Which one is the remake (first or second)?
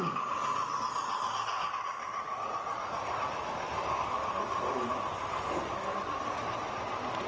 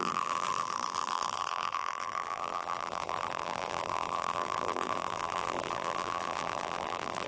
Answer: second